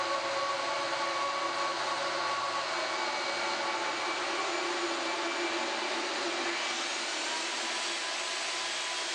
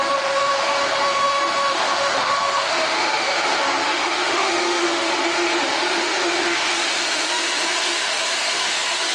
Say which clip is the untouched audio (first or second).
first